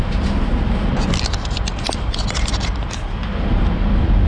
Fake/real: real